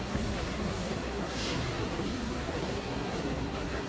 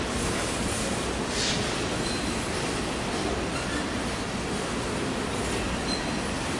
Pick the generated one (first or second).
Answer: first